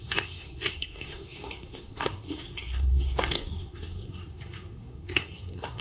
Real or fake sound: fake